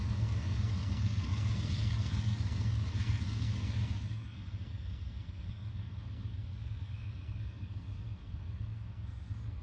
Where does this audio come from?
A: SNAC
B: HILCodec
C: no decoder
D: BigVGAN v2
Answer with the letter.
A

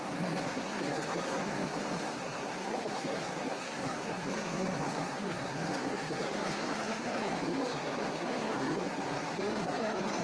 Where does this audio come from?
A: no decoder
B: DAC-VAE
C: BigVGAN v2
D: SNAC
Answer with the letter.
D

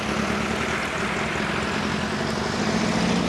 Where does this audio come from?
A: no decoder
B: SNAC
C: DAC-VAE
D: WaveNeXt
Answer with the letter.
A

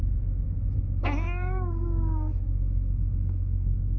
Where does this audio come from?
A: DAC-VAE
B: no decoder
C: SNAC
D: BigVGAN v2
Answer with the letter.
C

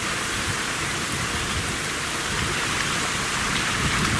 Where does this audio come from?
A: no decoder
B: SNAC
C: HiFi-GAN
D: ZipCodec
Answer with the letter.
A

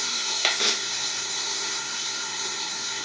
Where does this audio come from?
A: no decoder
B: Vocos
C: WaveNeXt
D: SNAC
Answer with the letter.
D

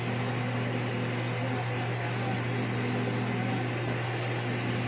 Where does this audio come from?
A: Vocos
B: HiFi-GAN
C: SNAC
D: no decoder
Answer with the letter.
D